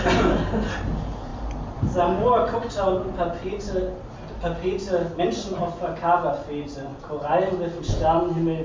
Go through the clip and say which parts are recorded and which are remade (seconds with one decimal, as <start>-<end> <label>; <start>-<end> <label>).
0.0-8.6 recorded